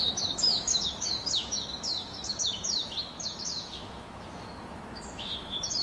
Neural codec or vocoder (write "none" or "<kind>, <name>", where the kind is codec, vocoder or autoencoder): autoencoder, DAC-VAE